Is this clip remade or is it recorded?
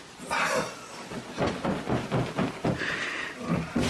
recorded